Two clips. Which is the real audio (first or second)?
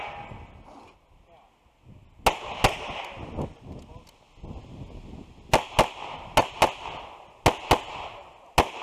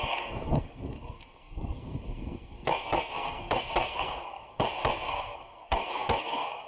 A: first